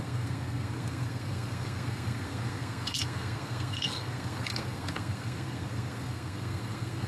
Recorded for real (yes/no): no